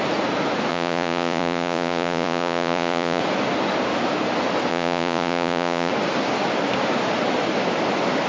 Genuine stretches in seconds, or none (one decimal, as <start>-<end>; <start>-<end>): 0.0-0.7; 3.2-4.7; 5.9-8.3